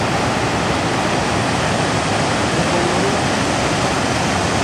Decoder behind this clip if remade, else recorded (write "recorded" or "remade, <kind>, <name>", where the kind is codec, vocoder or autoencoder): recorded